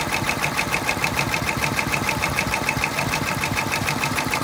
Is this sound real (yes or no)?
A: no